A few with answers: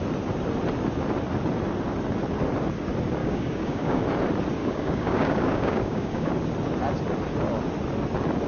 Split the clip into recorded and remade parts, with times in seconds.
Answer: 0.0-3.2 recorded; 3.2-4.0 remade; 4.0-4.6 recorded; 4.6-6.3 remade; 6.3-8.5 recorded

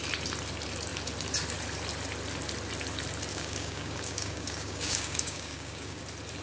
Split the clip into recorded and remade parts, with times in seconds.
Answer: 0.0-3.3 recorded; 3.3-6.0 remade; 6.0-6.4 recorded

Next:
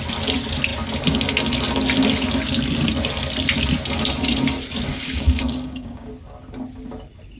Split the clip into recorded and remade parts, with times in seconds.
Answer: 0.0-4.9 recorded; 4.9-6.1 remade; 6.1-7.4 recorded

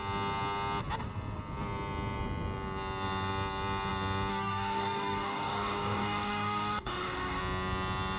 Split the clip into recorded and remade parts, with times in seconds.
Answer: 0.0-4.3 recorded; 4.3-7.4 remade; 7.4-8.2 recorded